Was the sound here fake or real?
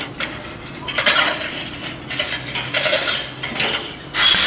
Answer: real